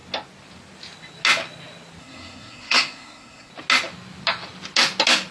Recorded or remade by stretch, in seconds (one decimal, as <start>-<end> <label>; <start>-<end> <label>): 0.0-2.0 recorded; 2.0-3.5 remade; 3.5-5.3 recorded